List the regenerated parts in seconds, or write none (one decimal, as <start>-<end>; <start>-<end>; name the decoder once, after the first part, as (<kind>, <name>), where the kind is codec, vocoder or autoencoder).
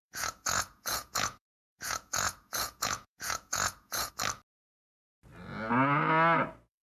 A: 0.0-4.1 (vocoder, Vocos)